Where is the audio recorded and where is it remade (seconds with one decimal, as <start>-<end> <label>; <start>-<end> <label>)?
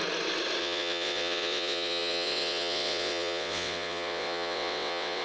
0.0-0.6 recorded; 0.6-5.2 remade